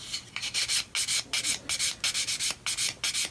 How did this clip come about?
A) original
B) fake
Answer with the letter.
A